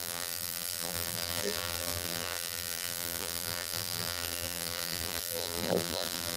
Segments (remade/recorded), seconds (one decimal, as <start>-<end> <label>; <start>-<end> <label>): 0.0-6.4 remade